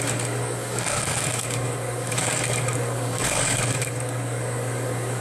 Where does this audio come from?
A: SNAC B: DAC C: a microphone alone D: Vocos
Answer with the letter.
B